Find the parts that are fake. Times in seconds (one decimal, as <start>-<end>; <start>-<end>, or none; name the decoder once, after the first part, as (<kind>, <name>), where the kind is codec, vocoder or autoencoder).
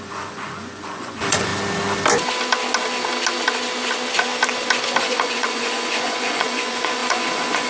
0.0-1.5 (vocoder, Vocos); 5.0-7.7